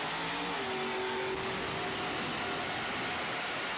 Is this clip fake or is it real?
real